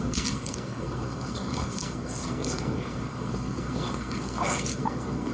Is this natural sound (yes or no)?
no